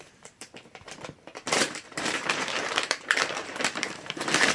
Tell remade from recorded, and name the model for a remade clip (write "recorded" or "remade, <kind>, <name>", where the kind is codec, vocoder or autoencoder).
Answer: remade, vocoder, BigVGAN v2